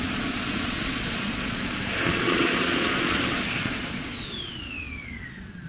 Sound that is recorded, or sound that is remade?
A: remade